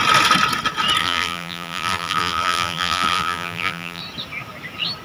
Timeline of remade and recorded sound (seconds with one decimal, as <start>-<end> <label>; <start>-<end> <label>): 0.0-1.0 recorded; 1.0-4.0 remade; 4.0-5.0 recorded